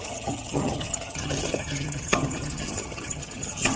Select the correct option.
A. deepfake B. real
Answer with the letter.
A